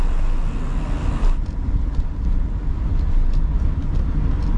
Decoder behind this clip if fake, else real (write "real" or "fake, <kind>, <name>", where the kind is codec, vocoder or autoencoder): real